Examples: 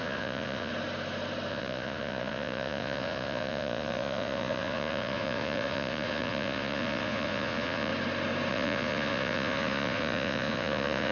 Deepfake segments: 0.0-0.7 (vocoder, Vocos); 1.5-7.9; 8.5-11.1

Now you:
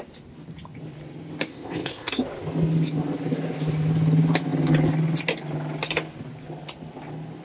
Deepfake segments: 1.5-2.1 (codec, ZipCodec)

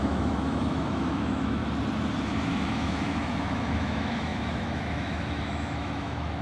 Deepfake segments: 0.0-1.6 (autoencoder, DAC-VAE); 2.2-6.4

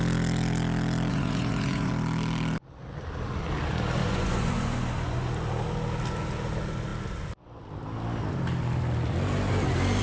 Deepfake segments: 1.1-1.9 (vocoder, Vocos); 4.0-5.3

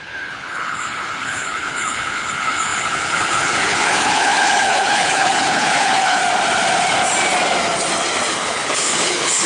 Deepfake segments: 0.0-6.2 (codec, HILCodec); 8.3-9.5

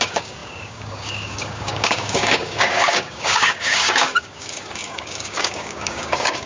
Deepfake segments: 0.0-6.5 (codec, DAC)

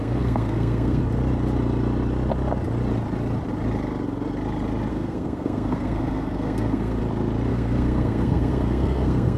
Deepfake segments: 0.0-1.0 (codec, SNAC); 4.9-7.0; 7.5-9.4